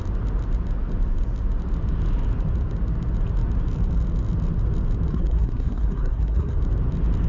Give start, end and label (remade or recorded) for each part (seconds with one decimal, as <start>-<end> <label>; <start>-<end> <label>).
0.0-5.1 recorded; 5.1-6.6 remade; 6.6-7.3 recorded

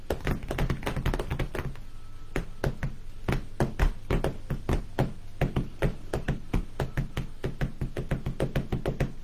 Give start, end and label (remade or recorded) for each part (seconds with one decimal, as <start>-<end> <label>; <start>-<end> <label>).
0.0-9.2 recorded

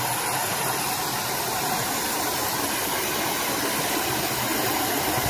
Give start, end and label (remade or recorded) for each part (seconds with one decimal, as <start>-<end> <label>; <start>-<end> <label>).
0.0-5.3 recorded